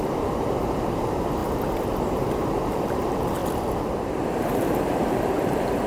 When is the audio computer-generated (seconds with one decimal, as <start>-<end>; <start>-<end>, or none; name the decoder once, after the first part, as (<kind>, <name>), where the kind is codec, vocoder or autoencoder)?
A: 0.0-1.4 (vocoder, BigVGAN v2); 2.1-3.4; 4.5-5.9

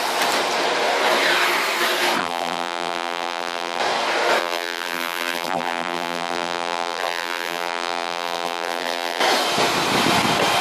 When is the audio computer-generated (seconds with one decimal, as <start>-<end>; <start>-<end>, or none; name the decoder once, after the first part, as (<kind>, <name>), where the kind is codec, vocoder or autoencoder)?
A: 2.2-3.8 (vocoder, BigVGAN v2); 4.4-9.2